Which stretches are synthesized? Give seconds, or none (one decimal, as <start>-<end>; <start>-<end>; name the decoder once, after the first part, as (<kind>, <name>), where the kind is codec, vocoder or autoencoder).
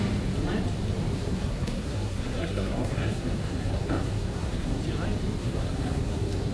1.1-4.8 (codec, SNAC); 5.4-6.5